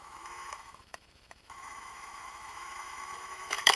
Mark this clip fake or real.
fake